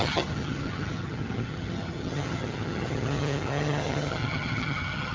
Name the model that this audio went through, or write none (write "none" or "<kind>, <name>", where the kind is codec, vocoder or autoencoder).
vocoder, HiFi-GAN